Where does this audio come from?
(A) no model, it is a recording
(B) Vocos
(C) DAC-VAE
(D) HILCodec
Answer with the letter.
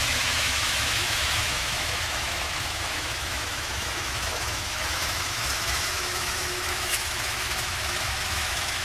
C